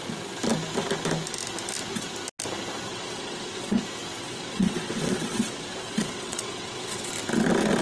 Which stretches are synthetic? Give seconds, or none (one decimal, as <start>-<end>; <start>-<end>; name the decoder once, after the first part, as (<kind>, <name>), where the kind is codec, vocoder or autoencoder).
2.9-3.8 (vocoder, WaveNeXt); 4.2-7.1